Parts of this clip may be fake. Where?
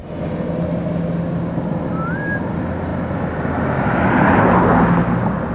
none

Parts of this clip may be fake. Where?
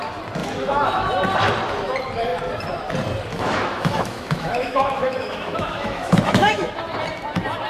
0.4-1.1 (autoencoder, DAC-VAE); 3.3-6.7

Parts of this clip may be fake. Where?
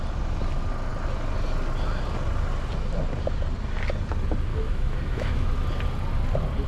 4.5-5.5 (autoencoder, DAC-VAE)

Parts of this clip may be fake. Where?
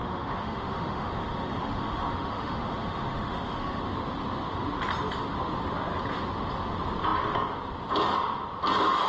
0.0-3.8 (autoencoder, DAC-VAE)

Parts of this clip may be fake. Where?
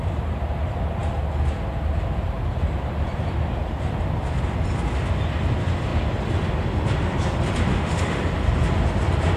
7.7-8.2 (autoencoder, DAC-VAE)